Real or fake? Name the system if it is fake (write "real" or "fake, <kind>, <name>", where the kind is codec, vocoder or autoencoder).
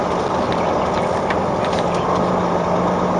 real